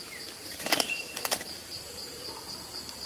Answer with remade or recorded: remade